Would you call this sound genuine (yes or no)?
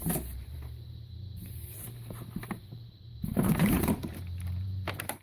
no